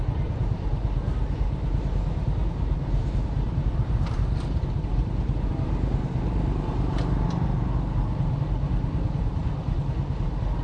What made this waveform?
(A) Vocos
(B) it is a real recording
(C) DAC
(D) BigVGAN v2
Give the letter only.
D